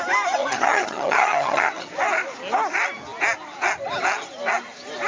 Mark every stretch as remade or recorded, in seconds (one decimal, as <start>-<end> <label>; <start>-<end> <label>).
0.0-0.4 recorded; 0.4-1.9 remade; 1.9-5.1 recorded